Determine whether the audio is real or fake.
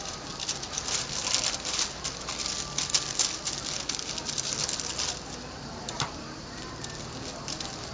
real